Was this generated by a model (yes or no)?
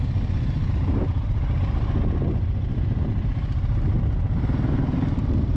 no